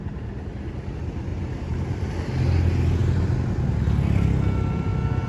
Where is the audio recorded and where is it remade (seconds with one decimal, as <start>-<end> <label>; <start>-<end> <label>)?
0.0-1.3 recorded; 1.3-2.1 remade; 2.1-5.3 recorded

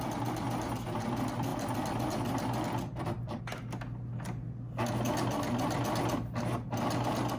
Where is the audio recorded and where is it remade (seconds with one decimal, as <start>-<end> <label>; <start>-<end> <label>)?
0.0-1.5 recorded; 1.5-3.4 remade; 3.4-7.4 recorded

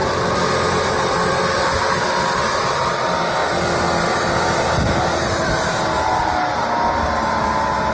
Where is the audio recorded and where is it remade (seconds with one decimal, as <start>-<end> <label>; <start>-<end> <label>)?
0.0-7.9 recorded

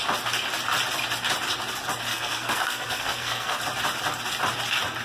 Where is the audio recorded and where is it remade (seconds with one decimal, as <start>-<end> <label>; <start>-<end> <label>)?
0.0-2.1 recorded; 2.1-3.6 remade; 3.6-5.0 recorded

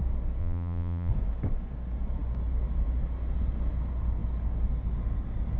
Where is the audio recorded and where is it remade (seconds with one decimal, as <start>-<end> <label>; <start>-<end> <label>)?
0.0-0.4 recorded; 0.4-1.1 remade; 1.1-5.6 recorded

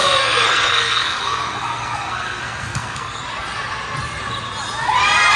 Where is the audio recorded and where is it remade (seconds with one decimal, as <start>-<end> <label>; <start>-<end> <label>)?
0.0-3.2 remade; 3.2-5.4 recorded